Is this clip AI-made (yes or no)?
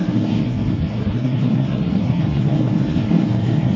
yes